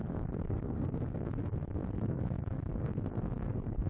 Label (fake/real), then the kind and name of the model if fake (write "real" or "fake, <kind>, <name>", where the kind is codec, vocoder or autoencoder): fake, codec, SNAC